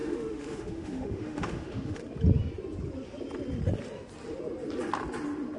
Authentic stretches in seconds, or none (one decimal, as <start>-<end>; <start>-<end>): 2.0-5.6